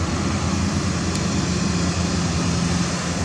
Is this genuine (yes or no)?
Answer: yes